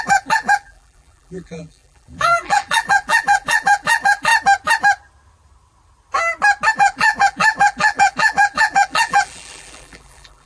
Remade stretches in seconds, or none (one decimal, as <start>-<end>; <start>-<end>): 0.0-4.3; 6.7-10.5